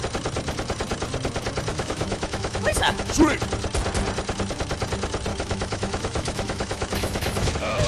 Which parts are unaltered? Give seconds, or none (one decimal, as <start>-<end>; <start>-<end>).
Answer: 0.0-1.7; 3.1-5.3; 7.5-7.9